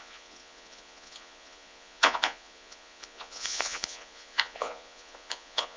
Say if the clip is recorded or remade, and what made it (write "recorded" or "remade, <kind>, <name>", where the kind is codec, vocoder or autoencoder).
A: remade, vocoder, Vocos